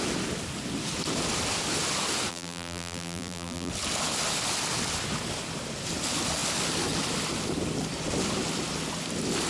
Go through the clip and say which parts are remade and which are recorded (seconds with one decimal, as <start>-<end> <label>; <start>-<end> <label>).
0.0-2.3 recorded; 2.3-3.7 remade; 3.7-9.5 recorded